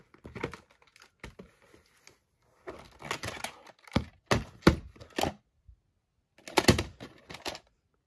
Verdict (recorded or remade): recorded